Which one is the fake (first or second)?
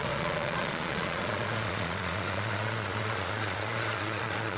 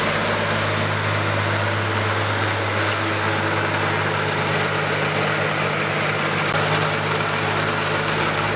first